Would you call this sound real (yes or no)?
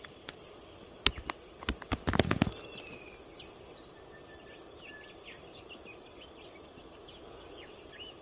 yes